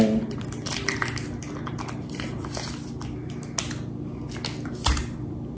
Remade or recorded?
recorded